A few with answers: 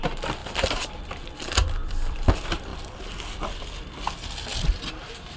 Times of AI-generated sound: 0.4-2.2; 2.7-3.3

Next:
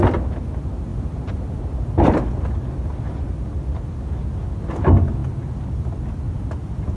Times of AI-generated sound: none

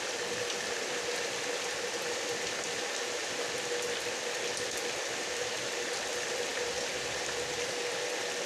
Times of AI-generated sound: 6.5-7.8

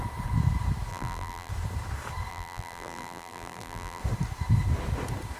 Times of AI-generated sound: 0.9-1.5; 2.3-4.0

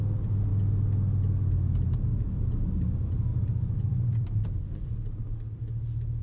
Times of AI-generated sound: 2.1-2.7; 3.3-5.6

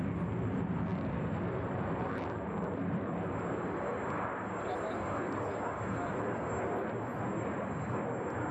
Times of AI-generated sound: 0.9-4.0; 7.1-8.5

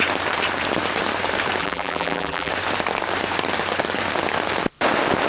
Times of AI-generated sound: 1.6-2.5

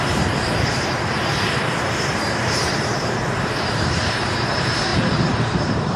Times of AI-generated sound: 0.0-6.0